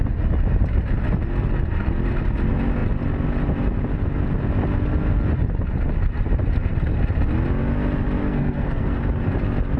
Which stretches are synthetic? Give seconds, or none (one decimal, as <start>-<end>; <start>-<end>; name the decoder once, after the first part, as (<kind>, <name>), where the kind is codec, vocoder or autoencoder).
8.2-9.0 (codec, SNAC)